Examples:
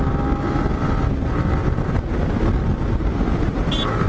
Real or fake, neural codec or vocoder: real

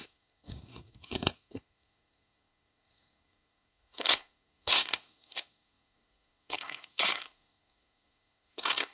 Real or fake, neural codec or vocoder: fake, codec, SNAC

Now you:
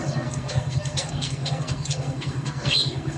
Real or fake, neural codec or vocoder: fake, codec, SNAC